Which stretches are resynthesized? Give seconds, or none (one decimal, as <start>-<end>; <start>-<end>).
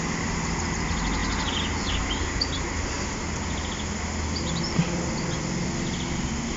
none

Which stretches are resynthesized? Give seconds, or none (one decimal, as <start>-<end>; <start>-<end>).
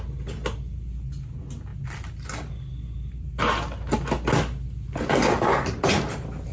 none